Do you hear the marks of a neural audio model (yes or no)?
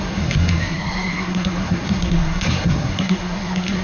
yes